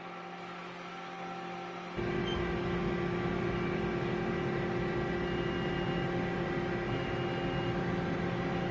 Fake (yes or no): no